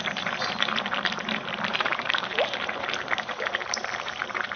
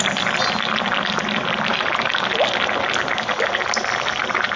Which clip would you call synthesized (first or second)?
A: first